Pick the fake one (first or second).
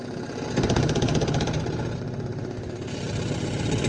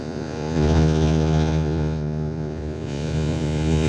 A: second